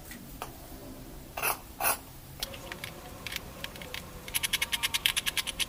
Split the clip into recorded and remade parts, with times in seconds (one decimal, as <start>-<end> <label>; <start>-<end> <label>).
0.0-5.7 remade